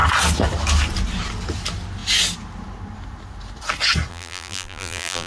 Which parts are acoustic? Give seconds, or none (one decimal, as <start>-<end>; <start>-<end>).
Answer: 0.0-4.1